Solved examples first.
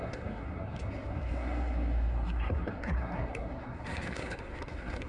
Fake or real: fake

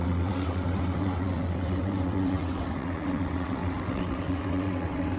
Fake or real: fake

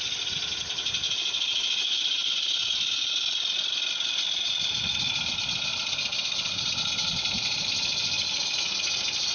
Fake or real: real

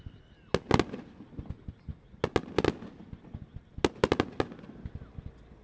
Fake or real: real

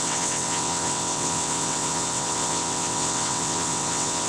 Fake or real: fake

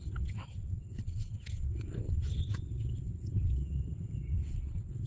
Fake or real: fake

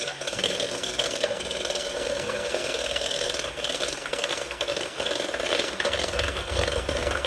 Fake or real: fake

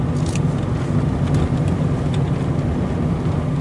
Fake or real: real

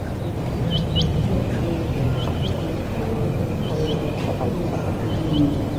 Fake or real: real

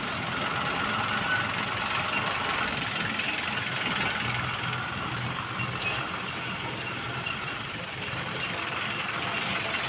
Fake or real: real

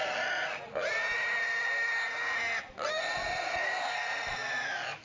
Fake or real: real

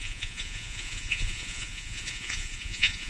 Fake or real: fake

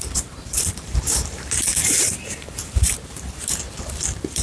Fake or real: fake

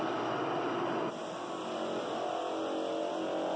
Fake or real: real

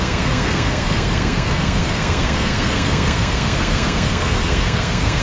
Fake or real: fake